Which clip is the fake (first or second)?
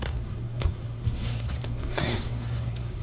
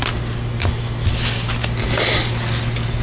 first